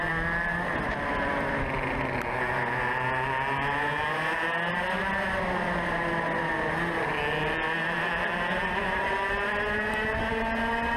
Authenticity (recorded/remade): recorded